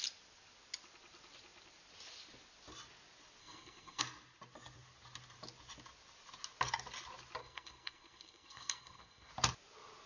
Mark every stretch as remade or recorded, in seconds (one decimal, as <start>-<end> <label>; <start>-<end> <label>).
0.0-3.4 recorded; 3.4-4.0 remade; 4.0-7.4 recorded; 7.4-9.3 remade; 9.3-10.1 recorded